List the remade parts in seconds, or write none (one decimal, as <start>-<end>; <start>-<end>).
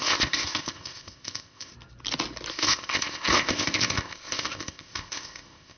0.0-1.7; 2.5-5.8